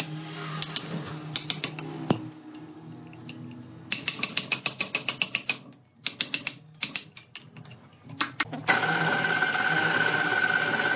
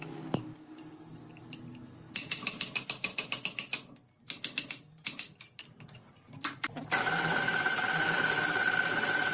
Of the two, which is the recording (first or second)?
first